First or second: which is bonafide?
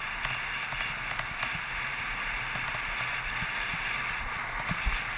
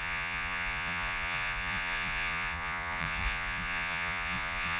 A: first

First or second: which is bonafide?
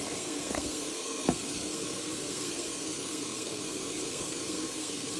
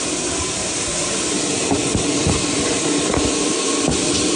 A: second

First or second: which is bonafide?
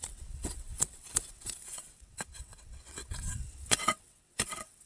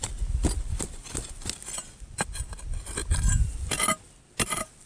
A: second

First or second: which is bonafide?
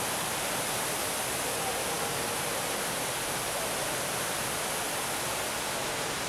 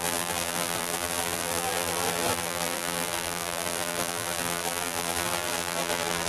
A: first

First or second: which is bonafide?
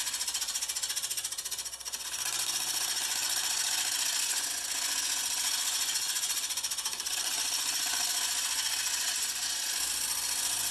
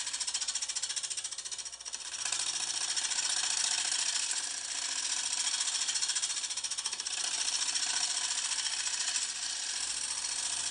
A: second